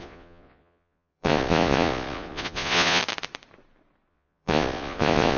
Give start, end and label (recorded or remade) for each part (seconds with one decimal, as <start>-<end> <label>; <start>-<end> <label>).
0.0-3.0 remade; 3.0-4.1 recorded; 4.1-5.4 remade